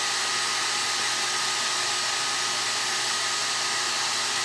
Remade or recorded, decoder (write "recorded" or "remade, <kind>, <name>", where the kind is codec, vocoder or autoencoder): recorded